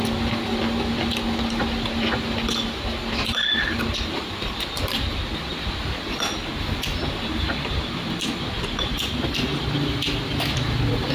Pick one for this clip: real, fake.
real